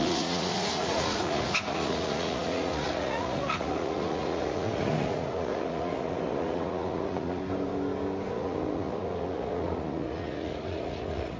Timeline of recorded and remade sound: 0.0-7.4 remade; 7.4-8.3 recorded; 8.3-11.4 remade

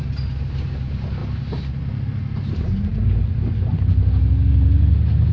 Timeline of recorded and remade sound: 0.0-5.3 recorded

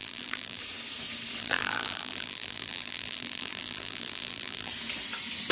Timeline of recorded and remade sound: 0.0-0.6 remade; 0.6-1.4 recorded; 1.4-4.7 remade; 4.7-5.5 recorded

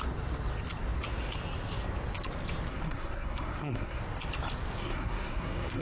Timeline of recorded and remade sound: 0.0-2.7 recorded; 2.7-4.0 remade; 4.0-4.8 recorded; 4.8-5.8 remade

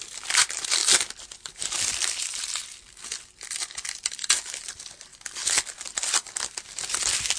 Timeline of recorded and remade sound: 0.0-0.8 recorded; 0.8-2.5 remade; 2.5-7.4 recorded

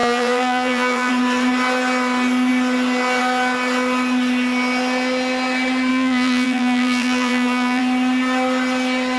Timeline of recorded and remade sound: 0.0-1.1 remade; 1.1-5.9 recorded; 5.9-7.8 remade; 7.8-9.2 recorded

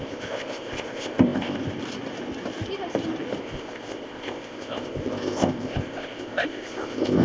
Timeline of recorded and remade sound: 0.0-1.6 remade; 1.6-3.4 recorded; 3.4-7.2 remade